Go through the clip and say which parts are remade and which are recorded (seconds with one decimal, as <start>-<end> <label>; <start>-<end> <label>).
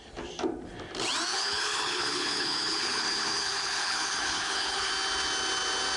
0.0-1.3 recorded; 1.3-4.9 remade; 4.9-6.0 recorded